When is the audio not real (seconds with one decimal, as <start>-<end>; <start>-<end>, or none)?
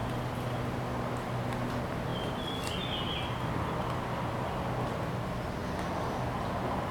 none